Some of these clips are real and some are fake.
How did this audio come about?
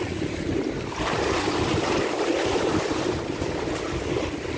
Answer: real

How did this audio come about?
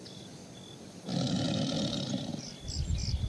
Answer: fake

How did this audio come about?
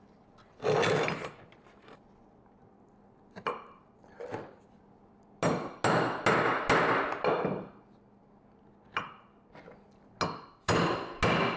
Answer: real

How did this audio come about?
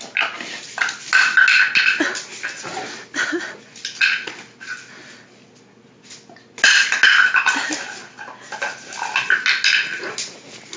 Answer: real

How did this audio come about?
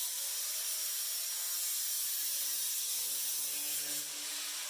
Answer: real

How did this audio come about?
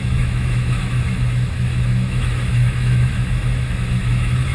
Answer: fake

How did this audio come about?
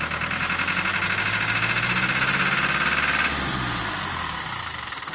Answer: real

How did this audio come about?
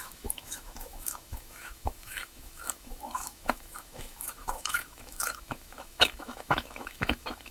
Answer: fake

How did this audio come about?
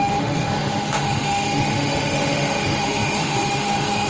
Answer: fake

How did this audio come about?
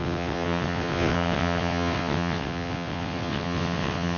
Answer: fake